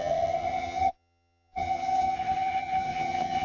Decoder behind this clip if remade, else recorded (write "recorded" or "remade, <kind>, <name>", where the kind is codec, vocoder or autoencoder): remade, vocoder, HiFi-GAN